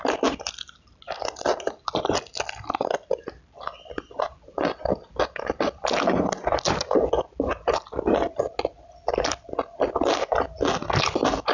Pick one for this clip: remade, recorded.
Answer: recorded